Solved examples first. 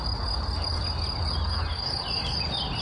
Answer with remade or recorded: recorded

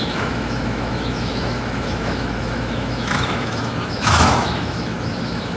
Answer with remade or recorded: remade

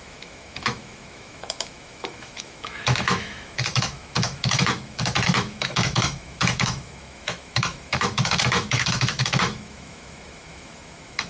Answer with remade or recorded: remade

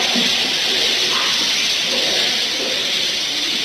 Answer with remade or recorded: recorded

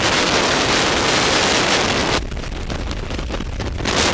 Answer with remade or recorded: recorded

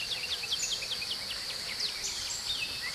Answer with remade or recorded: recorded